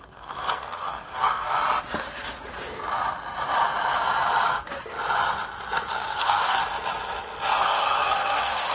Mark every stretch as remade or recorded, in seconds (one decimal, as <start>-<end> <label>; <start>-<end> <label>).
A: 0.0-1.6 remade; 1.6-5.9 recorded; 5.9-6.6 remade; 6.6-7.6 recorded; 7.6-8.7 remade